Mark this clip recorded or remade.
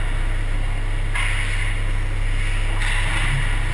recorded